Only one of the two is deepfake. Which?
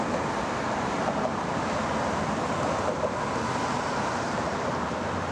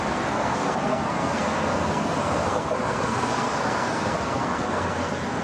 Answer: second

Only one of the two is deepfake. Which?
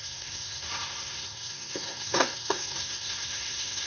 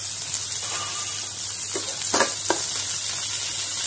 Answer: first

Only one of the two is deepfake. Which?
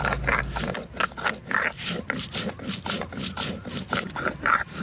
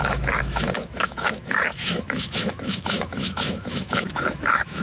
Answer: second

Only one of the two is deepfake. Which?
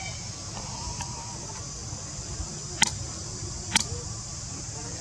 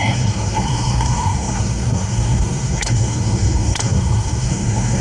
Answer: second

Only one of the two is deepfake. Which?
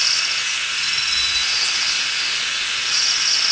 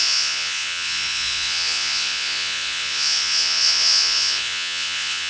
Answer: second